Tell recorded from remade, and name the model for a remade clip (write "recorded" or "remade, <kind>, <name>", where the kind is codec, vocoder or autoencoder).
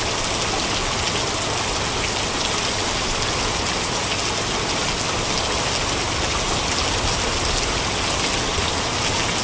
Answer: recorded